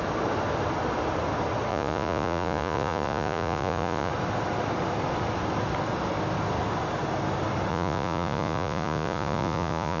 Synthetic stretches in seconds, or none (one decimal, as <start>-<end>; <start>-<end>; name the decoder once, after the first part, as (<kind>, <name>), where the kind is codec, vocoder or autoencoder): 1.7-4.1 (vocoder, Vocos); 7.7-10.0